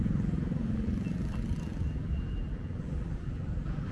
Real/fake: fake